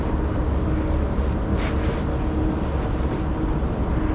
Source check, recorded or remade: recorded